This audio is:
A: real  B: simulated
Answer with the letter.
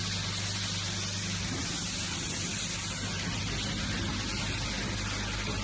A